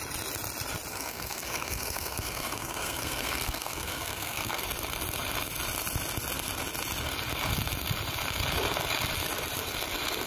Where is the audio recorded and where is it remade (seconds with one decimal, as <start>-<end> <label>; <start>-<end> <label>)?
0.0-0.9 recorded; 0.9-4.6 remade; 4.6-10.3 recorded